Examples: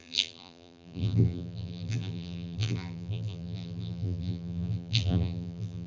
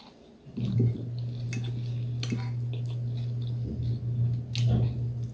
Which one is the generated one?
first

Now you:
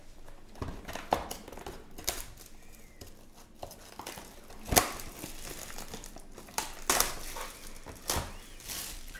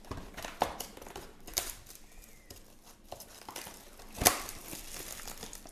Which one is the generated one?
second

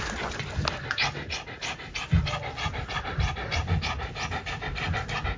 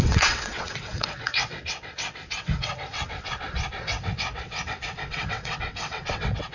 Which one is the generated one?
second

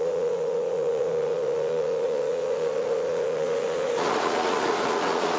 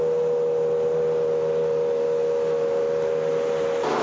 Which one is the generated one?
first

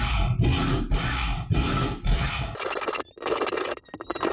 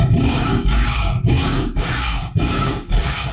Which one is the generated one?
second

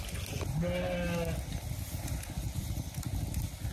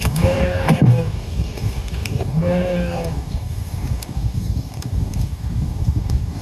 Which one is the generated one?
second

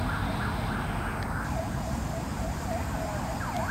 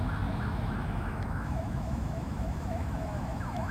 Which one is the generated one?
second